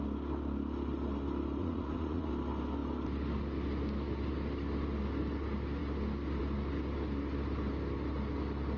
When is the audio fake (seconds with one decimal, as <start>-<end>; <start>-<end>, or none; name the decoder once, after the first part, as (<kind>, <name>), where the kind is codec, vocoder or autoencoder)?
1.6-2.3 (vocoder, Vocos)